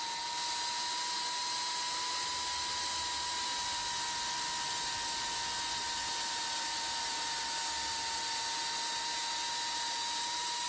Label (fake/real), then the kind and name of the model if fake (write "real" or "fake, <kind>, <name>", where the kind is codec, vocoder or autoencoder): real